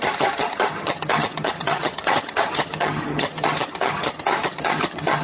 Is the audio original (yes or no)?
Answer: no